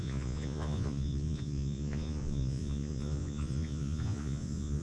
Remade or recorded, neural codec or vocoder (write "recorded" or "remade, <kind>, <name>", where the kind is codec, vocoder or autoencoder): remade, vocoder, Vocos